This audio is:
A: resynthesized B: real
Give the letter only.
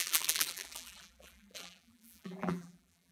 A